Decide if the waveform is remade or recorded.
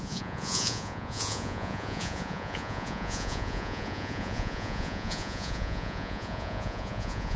remade